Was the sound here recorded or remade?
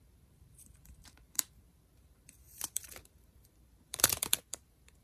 remade